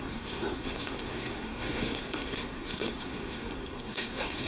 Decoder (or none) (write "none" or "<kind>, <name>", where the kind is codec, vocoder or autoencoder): codec, SNAC